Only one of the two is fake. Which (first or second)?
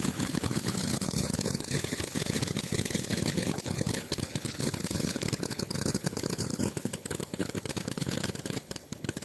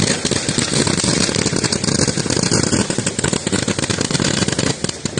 first